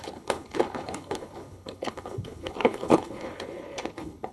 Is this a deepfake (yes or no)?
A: yes